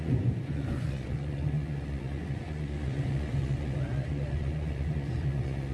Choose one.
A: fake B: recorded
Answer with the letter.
A